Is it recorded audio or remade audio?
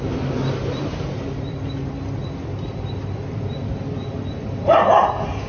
recorded